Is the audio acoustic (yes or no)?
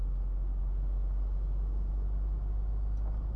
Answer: yes